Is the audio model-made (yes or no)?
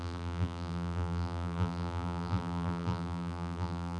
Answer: yes